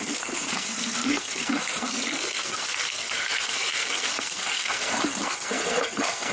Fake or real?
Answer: fake